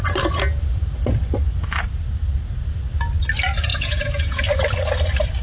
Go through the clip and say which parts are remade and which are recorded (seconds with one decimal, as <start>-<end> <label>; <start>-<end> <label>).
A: 0.0-3.7 recorded; 3.7-4.4 remade; 4.4-5.4 recorded